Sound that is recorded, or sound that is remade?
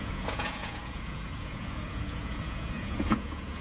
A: remade